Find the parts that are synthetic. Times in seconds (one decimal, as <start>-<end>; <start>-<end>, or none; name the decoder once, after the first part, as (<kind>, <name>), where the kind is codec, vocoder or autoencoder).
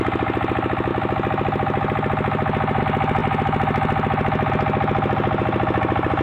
none